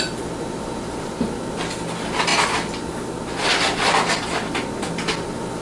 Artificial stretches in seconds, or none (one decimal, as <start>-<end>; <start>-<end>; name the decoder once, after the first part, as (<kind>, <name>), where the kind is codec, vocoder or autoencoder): none